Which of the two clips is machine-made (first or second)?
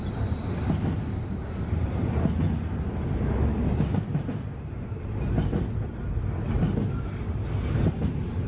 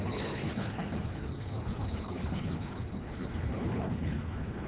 second